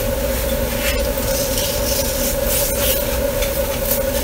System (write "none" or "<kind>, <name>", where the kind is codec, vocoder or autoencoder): none